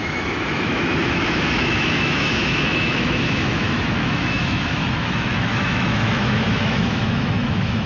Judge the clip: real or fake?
fake